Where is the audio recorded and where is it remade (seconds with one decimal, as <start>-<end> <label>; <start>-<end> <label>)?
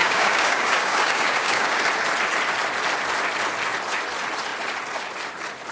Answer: 0.0-1.8 remade; 1.8-5.7 recorded